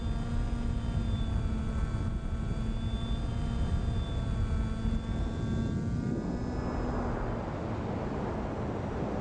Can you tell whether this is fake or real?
real